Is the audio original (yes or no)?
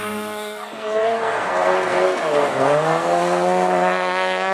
no